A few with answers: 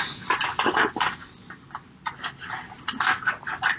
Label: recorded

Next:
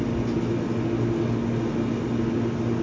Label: recorded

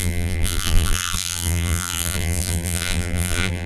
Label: remade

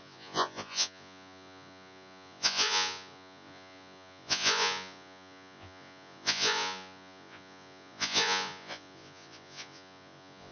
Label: remade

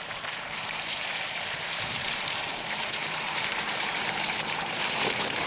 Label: remade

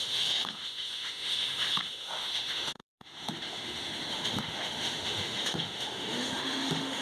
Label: remade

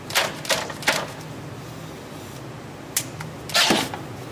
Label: recorded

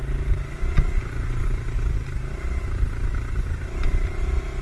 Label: recorded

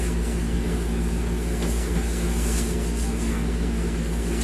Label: remade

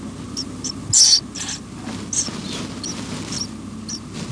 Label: recorded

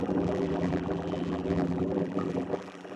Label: remade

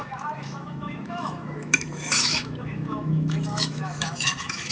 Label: remade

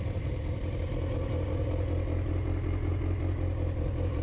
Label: recorded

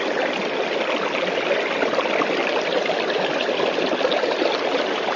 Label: recorded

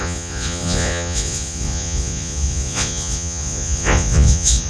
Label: remade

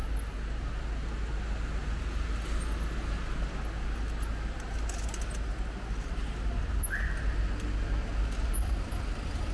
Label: recorded